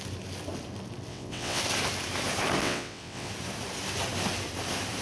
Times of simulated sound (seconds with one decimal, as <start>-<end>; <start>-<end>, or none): 1.1-1.6; 2.6-3.3